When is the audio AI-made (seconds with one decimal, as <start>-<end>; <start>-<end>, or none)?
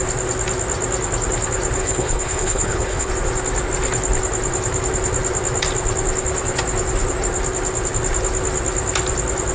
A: 1.8-3.1